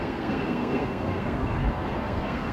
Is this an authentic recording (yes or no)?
no